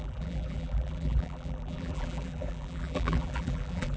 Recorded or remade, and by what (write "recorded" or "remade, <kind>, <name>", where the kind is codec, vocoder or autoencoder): remade, vocoder, BigVGAN v2